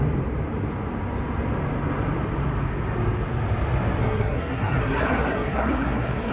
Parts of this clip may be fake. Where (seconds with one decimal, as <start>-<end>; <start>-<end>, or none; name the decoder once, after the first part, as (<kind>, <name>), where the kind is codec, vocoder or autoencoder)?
4.0-6.3 (codec, SNAC)